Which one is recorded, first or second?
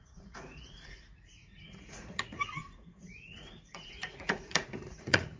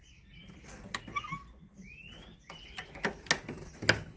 second